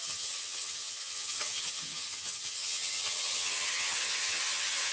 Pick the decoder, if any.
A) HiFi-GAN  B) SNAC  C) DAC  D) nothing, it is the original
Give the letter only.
A